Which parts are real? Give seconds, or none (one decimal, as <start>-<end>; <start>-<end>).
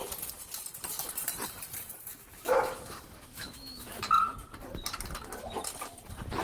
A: 0.0-2.1; 4.0-6.4